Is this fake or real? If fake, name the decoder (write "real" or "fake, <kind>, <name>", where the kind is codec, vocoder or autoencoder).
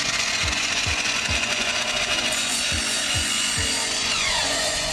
fake, vocoder, Vocos